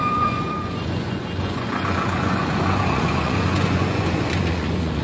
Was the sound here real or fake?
fake